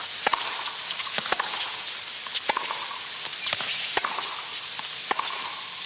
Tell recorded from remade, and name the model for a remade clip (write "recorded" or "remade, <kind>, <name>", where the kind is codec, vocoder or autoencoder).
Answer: recorded